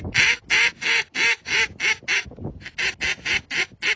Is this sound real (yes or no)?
yes